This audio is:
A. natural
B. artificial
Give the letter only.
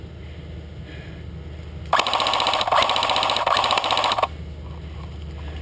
A